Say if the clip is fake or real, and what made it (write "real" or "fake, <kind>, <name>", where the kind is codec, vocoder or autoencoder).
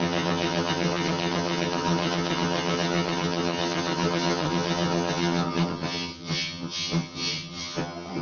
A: fake, vocoder, HiFi-GAN